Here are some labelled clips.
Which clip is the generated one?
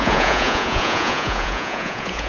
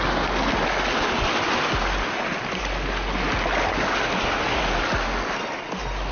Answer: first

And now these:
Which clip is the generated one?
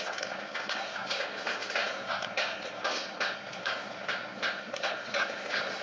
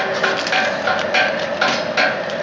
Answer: first